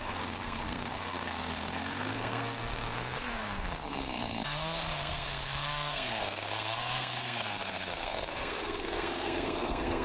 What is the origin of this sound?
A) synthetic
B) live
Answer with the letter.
A